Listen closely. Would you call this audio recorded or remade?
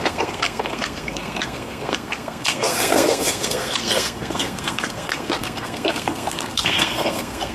remade